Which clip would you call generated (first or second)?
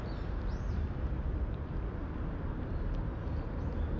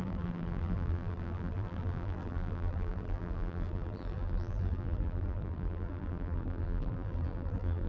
second